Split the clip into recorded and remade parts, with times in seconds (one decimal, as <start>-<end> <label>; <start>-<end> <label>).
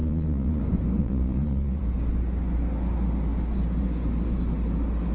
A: 0.0-0.6 remade; 0.6-1.0 recorded; 1.0-1.8 remade; 1.8-5.1 recorded